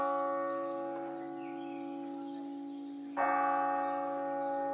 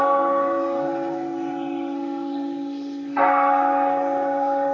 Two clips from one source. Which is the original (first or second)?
first